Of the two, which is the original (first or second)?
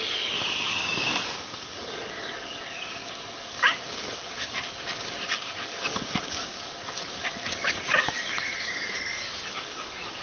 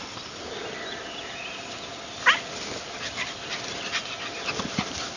second